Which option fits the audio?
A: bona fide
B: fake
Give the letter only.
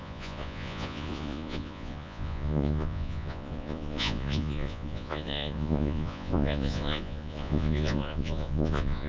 B